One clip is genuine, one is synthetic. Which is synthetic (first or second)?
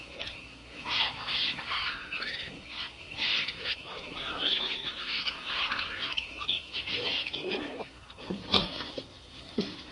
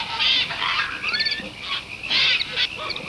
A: first